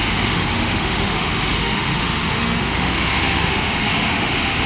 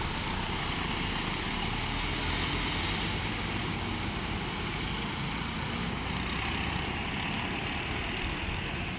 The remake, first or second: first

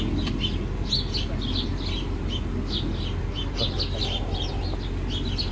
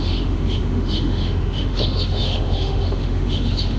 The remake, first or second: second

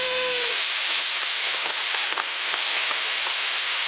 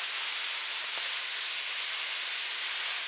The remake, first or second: first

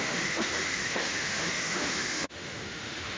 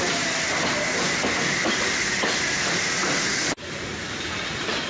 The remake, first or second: first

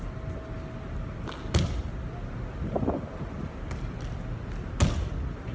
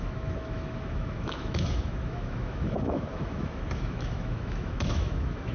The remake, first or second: second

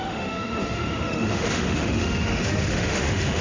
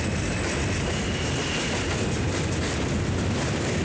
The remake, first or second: first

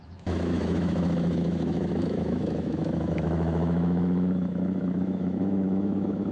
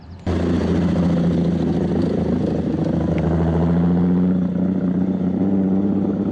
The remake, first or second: first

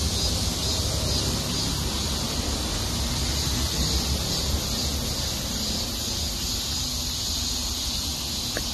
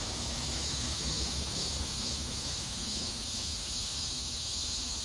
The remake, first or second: second